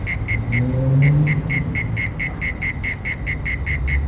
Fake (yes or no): no